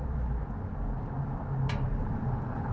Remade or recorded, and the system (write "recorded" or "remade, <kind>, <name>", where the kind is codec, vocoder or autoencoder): recorded